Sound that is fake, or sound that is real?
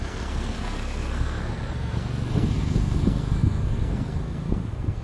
fake